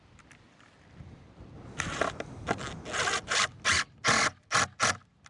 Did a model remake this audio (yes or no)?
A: no